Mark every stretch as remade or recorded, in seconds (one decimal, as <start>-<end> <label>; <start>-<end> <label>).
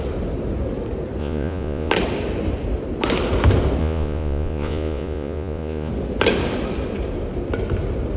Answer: 0.0-1.2 recorded; 1.2-1.9 remade; 1.9-3.8 recorded; 3.8-5.9 remade; 5.9-8.2 recorded